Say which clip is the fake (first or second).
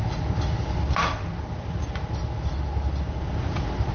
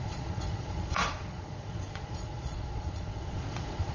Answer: second